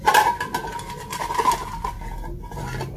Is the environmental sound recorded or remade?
recorded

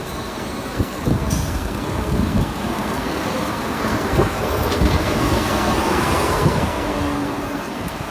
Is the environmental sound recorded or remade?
remade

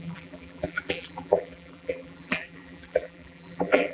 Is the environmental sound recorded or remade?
remade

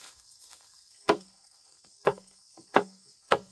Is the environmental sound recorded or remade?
remade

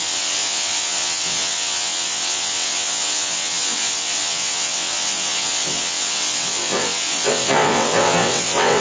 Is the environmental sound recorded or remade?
remade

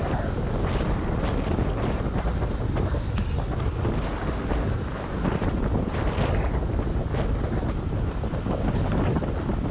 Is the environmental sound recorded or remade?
recorded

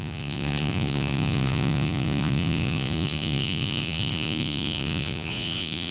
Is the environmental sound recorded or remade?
remade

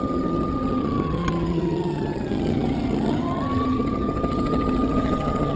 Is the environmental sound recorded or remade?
remade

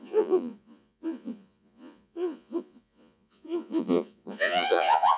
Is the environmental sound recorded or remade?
remade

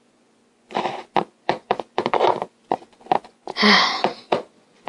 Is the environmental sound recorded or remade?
remade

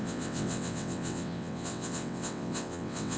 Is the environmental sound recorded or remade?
remade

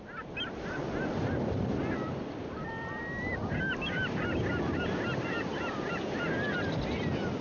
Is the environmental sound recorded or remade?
recorded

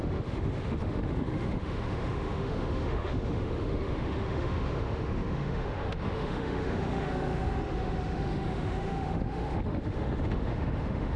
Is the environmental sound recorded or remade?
remade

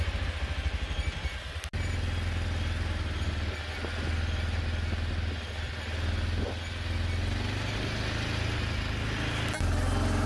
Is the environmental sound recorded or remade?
recorded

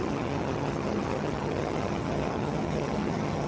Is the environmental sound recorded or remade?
remade